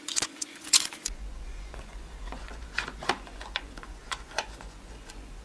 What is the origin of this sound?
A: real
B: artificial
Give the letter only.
B